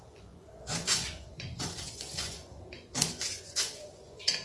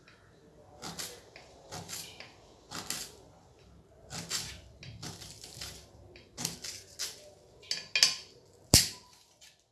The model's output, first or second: first